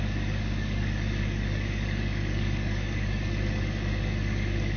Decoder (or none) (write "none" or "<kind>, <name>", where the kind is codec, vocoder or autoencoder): codec, DAC